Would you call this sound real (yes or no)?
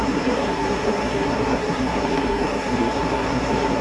no